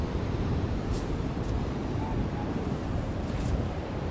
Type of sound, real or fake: fake